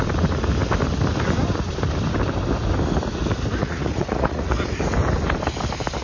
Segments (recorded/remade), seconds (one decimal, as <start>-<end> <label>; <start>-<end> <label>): 0.0-3.6 recorded; 3.6-4.6 remade; 4.6-6.0 recorded